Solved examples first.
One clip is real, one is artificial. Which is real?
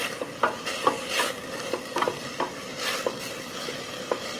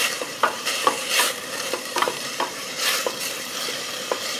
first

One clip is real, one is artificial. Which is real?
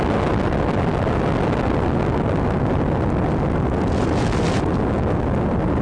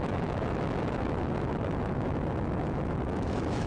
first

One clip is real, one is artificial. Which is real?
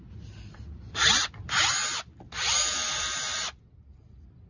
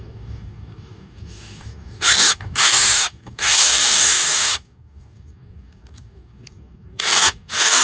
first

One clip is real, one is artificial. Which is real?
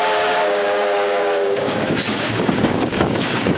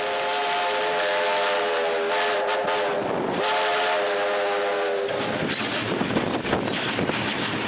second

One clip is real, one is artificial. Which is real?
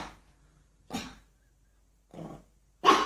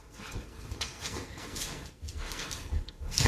first